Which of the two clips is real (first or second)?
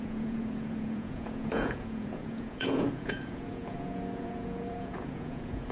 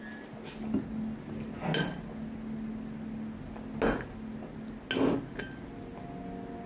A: second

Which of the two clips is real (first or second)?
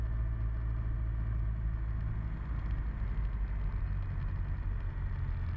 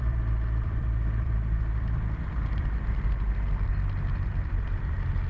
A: first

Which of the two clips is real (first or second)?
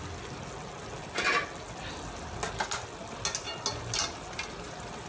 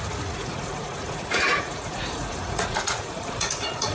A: first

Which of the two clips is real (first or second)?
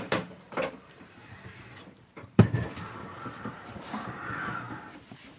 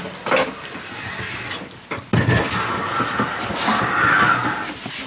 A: second